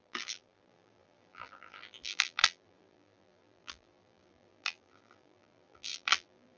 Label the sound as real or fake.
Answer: fake